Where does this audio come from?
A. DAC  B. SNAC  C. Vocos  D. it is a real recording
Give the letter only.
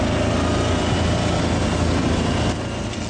D